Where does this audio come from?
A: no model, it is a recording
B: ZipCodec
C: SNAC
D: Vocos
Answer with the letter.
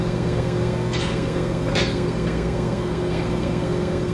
C